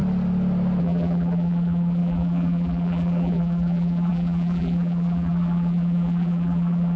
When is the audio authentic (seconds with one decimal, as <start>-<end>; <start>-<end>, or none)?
0.0-0.8